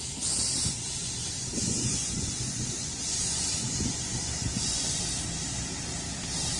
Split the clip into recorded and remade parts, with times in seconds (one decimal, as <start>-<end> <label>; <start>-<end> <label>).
0.0-1.0 recorded; 1.0-5.0 remade; 5.0-6.6 recorded